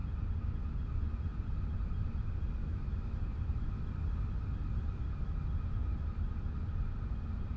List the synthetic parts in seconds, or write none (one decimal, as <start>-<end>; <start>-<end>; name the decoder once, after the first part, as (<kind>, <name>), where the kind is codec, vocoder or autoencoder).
2.6-3.9 (autoencoder, DAC-VAE)